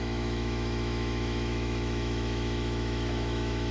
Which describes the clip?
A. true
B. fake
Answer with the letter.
B